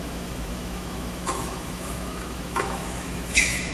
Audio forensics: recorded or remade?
remade